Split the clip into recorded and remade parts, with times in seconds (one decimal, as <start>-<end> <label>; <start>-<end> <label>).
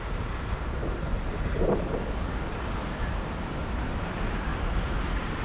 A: 0.0-0.8 remade; 0.8-1.4 recorded; 1.4-4.5 remade; 4.5-5.0 recorded; 5.0-5.4 remade